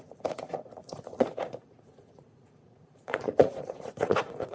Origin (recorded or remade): remade